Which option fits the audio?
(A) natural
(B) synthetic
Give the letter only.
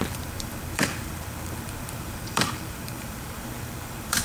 B